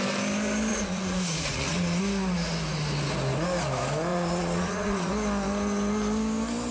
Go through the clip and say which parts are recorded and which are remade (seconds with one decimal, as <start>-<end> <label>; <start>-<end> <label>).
0.0-0.7 recorded; 0.7-2.0 remade; 2.0-4.1 recorded; 4.1-5.1 remade; 5.1-6.7 recorded